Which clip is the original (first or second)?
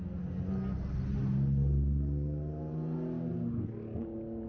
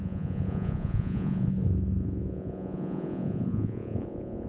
first